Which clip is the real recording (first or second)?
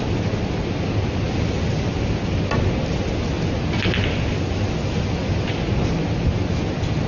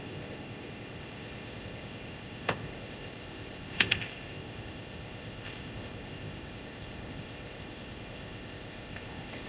first